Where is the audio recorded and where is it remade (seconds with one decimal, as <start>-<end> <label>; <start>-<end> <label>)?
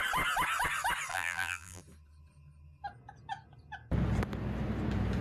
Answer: 0.0-1.1 recorded; 1.1-1.8 remade; 1.8-5.2 recorded